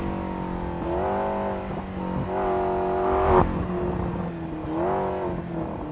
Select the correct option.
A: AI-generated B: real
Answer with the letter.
B